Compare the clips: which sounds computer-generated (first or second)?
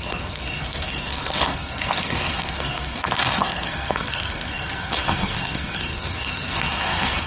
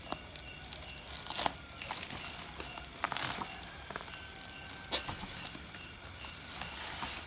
first